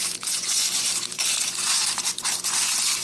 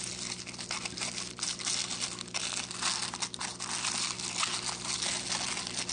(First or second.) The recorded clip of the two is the second